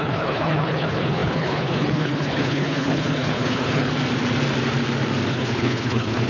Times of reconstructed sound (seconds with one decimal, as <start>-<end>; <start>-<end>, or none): 0.0-3.9; 5.3-6.3

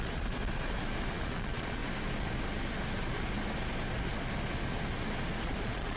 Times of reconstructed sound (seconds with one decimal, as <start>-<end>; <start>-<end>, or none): 0.0-0.4; 1.1-1.8; 5.4-6.0